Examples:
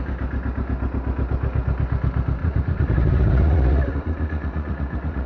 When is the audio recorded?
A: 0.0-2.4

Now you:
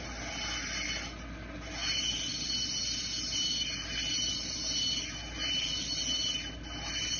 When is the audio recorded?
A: 0.0-7.2